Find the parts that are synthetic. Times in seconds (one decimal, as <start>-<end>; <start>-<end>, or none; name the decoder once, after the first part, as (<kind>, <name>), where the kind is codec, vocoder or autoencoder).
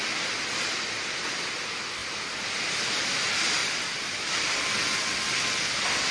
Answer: 2.0-2.9 (vocoder, BigVGAN v2); 3.6-4.4